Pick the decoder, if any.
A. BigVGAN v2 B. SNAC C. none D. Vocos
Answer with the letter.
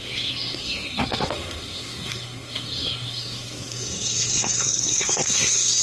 B